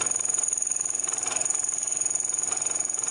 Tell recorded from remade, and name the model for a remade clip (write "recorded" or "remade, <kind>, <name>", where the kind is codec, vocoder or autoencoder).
recorded